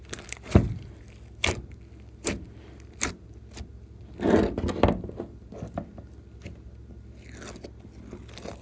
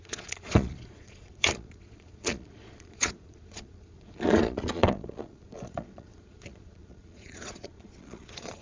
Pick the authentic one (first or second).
first